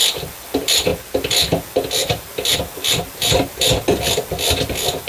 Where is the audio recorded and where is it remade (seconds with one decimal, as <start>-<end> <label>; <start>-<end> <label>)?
0.0-5.1 recorded